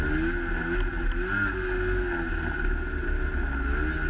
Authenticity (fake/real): real